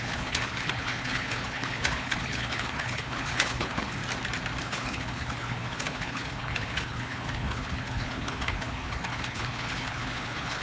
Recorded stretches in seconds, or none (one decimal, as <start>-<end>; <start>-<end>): 4.0-4.6

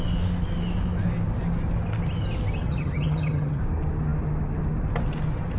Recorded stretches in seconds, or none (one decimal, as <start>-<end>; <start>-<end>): 0.0-2.6; 3.6-5.6

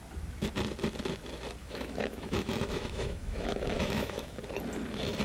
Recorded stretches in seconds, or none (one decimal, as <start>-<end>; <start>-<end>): 0.0-1.6; 4.4-5.2

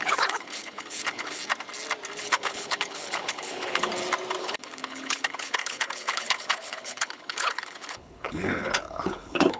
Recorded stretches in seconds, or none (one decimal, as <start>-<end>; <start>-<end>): 1.4-2.2; 3.9-4.4

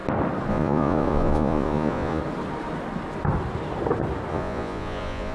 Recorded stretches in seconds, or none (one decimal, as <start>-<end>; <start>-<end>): 0.0-0.5; 2.2-4.3

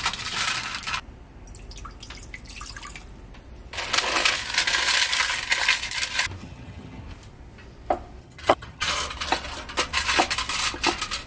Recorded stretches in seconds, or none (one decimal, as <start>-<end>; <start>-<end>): 0.0-6.4; 7.0-8.2; 8.9-11.3

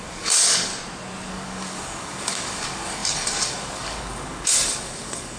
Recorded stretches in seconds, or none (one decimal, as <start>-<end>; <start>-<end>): 0.7-1.3

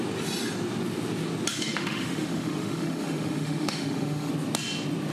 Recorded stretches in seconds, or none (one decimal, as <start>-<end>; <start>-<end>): 0.0-1.5; 4.3-5.1